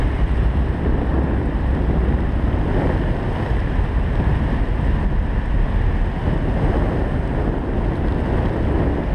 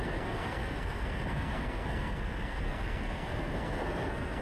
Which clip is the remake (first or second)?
second